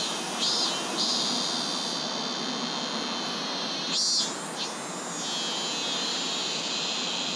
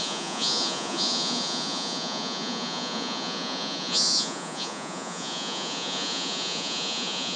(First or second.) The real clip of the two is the first